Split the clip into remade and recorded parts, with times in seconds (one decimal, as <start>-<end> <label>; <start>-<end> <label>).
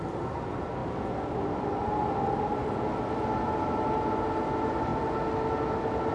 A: 0.0-6.1 recorded